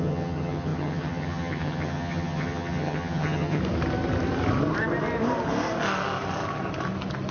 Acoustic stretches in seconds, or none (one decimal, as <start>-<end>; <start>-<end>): 3.6-7.3